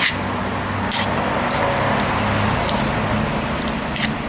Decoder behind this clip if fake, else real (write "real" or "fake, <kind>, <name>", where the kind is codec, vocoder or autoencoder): real